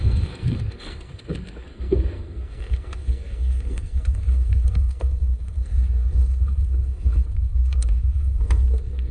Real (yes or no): no